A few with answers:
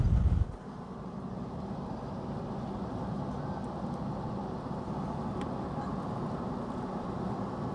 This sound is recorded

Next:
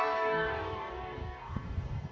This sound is remade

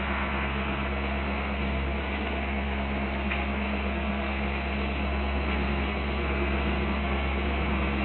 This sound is remade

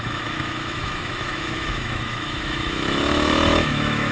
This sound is remade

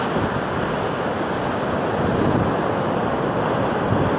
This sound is recorded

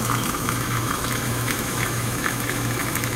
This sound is remade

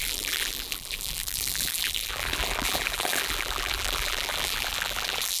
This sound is remade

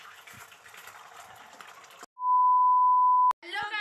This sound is recorded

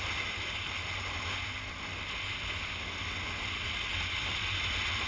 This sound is recorded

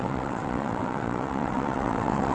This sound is remade